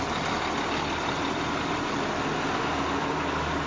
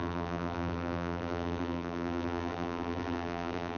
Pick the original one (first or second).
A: first